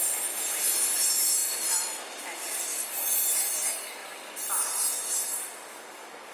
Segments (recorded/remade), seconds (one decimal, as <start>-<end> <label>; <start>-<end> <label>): 0.0-1.4 recorded; 1.4-2.0 remade; 2.0-6.3 recorded